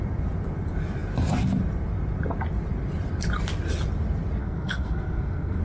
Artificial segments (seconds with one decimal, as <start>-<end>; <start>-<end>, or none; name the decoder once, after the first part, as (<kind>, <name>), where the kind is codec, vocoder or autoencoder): 4.4-5.6 (codec, SNAC)